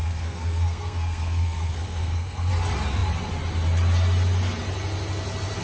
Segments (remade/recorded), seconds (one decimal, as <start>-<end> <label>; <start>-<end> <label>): 0.0-2.5 remade; 2.5-5.6 recorded